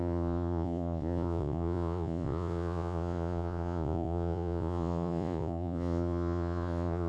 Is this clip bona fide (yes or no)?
no